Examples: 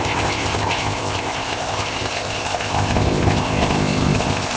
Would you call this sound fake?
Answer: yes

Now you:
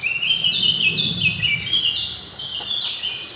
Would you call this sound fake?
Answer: no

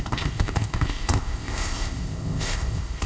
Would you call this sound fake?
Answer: yes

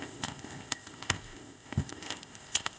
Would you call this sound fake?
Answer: yes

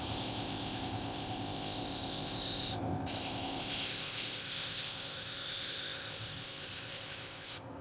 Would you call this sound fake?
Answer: yes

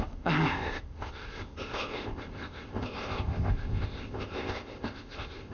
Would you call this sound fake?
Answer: yes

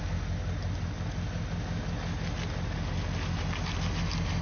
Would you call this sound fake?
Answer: no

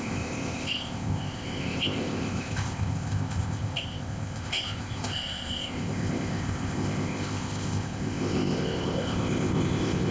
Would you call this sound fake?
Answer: yes